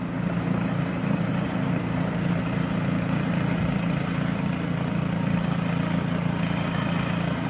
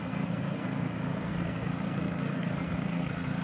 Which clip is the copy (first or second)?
second